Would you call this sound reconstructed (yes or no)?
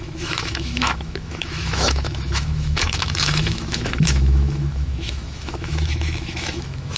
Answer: yes